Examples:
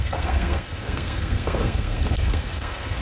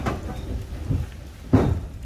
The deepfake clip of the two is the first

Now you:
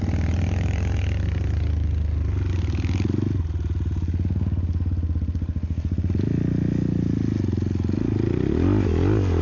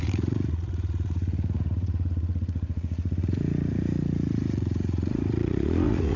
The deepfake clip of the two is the second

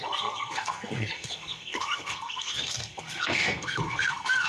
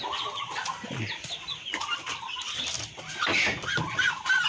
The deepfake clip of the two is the first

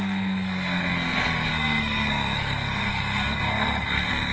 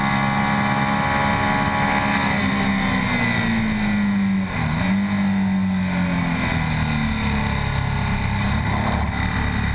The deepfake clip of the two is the first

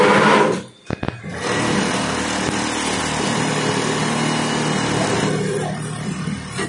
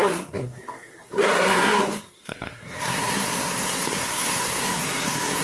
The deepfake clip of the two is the second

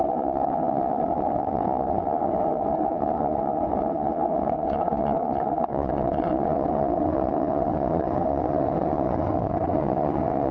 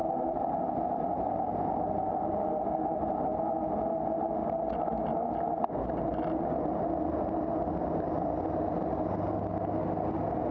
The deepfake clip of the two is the first